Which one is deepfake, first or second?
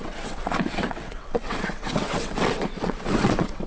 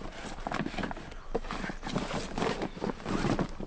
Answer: first